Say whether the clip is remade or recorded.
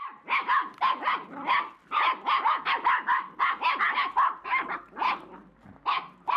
recorded